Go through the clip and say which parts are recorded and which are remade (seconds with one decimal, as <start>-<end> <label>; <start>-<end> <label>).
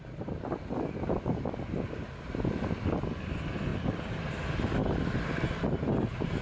0.0-3.7 recorded; 3.7-4.3 remade; 4.3-4.8 recorded; 4.8-5.3 remade; 5.3-6.4 recorded